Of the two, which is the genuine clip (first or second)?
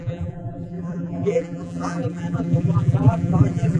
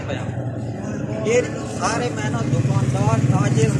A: second